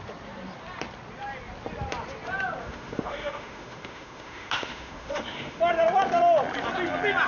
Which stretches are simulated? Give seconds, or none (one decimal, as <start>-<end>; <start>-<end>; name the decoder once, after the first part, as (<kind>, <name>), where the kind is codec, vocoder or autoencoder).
2.6-5.6 (autoencoder, DAC-VAE)